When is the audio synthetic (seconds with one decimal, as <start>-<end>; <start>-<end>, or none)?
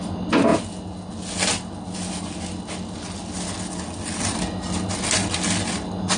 none